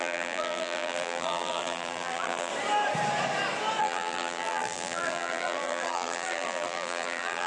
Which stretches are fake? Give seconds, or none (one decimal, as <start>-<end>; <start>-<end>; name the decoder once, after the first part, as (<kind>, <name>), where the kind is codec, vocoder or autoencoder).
0.0-2.5 (vocoder, BigVGAN v2); 3.8-7.5

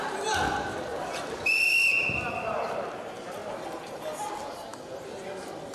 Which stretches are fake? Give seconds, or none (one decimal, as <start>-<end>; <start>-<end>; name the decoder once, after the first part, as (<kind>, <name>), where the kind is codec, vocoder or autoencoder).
none

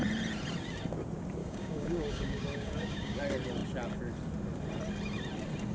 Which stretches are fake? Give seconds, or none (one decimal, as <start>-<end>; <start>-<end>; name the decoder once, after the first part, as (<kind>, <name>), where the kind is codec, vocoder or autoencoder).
1.4-3.2 (codec, DAC)

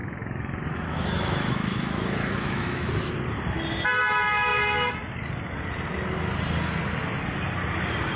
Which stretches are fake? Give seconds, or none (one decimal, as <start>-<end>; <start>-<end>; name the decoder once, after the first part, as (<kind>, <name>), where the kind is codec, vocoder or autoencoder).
0.0-2.9 (autoencoder, DAC-VAE)

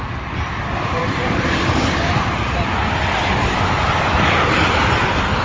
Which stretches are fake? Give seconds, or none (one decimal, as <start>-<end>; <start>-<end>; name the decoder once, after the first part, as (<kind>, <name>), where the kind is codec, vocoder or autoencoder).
0.0-5.4 (vocoder, BigVGAN v2)

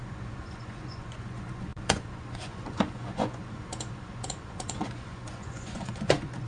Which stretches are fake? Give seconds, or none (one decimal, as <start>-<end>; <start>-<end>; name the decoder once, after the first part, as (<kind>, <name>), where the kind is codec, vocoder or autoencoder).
0.0-6.5 (vocoder, Vocos)